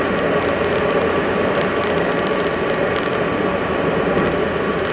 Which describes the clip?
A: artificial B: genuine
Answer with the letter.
B